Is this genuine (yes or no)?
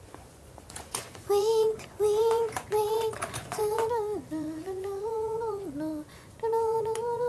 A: no